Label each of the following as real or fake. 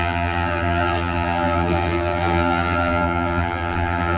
fake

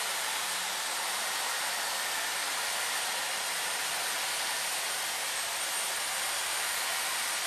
fake